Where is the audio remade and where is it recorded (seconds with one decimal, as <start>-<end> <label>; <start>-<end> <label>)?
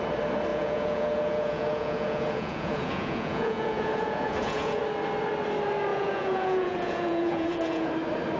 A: 0.0-0.5 recorded; 0.5-4.8 remade; 4.8-5.9 recorded; 5.9-7.9 remade; 7.9-8.4 recorded